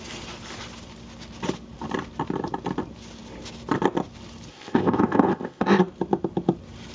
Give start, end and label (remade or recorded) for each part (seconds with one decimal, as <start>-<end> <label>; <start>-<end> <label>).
0.0-4.5 recorded; 4.5-5.8 remade; 5.8-6.9 recorded